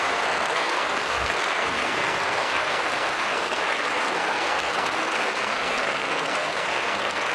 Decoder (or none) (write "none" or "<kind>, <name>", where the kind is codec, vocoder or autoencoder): codec, SNAC